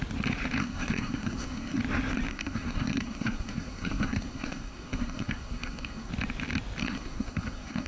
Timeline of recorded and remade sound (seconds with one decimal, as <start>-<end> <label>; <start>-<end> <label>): 0.0-0.6 recorded; 0.6-1.8 remade; 1.8-2.3 recorded; 2.3-6.1 remade; 6.1-6.8 recorded; 6.8-7.9 remade